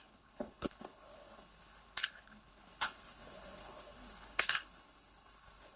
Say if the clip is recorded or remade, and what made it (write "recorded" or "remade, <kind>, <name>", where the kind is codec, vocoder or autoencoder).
remade, codec, HILCodec